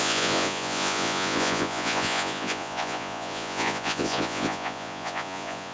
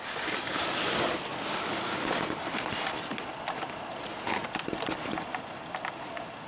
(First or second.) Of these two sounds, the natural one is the second